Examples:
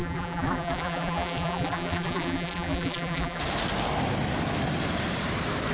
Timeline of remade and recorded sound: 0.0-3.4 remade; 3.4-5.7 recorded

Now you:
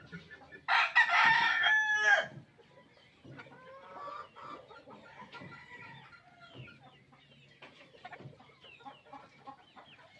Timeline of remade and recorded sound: 0.0-10.2 recorded

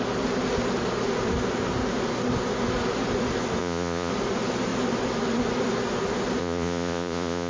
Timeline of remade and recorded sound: 0.0-3.6 recorded; 3.6-4.1 remade; 4.1-6.4 recorded; 6.4-7.5 remade

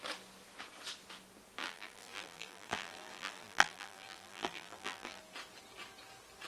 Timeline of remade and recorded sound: 0.0-1.6 recorded; 1.6-5.2 remade; 5.2-6.5 recorded

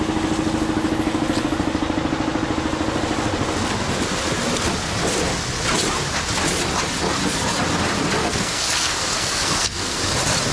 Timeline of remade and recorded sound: 0.0-8.2 recorded; 8.2-10.0 remade; 10.0-10.5 recorded